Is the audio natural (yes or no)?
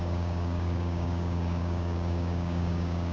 no